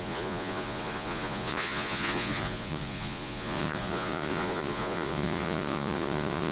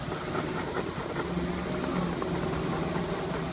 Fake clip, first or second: first